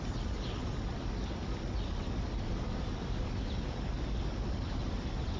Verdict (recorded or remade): recorded